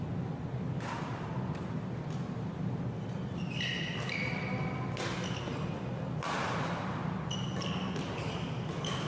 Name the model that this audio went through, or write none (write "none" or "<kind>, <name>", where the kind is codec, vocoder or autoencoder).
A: none